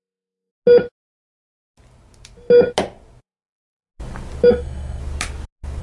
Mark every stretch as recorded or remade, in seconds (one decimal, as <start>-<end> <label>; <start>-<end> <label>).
0.0-0.5 remade; 0.5-3.2 recorded; 3.2-3.9 remade; 3.9-4.5 recorded; 4.5-5.0 remade; 5.0-5.8 recorded